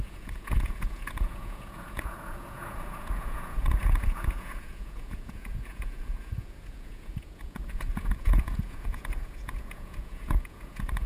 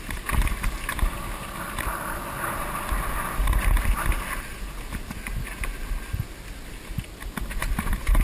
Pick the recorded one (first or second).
second